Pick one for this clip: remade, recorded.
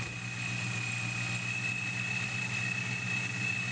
recorded